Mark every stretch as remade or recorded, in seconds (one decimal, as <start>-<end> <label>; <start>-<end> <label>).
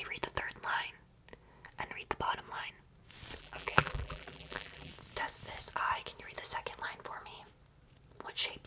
0.0-3.4 recorded; 3.4-4.9 remade; 4.9-8.7 recorded